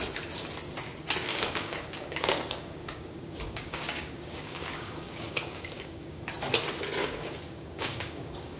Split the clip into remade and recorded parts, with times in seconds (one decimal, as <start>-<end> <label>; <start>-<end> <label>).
0.0-1.3 recorded; 1.3-6.2 remade; 6.2-7.0 recorded; 7.0-8.6 remade